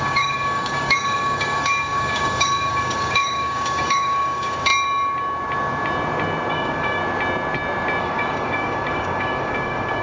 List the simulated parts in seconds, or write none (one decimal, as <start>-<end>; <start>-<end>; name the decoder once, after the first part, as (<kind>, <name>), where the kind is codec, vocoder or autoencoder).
0.0-4.7 (codec, DAC); 6.5-7.0; 8.0-10.0